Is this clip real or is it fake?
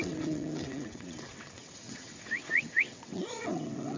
fake